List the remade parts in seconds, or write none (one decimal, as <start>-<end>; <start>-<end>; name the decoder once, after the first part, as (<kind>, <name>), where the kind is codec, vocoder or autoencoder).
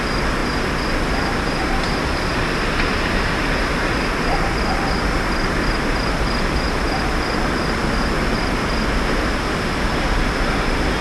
none